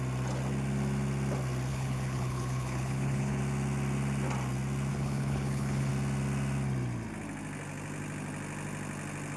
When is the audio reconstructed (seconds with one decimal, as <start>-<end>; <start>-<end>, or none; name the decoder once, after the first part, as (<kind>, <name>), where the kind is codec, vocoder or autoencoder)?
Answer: 1.7-3.4 (codec, HILCodec); 4.9-5.9